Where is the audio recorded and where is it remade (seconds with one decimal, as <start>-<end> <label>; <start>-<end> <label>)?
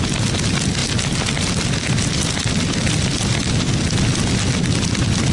0.0-5.3 recorded